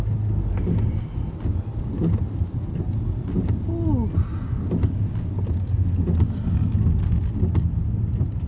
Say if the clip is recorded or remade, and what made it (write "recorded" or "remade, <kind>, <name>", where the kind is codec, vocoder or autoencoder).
recorded